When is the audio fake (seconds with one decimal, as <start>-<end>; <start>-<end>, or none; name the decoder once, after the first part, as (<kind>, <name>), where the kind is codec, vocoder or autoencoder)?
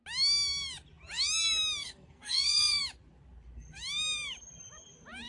1.8-2.8 (codec, SNAC)